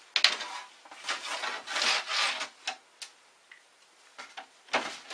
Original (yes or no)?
yes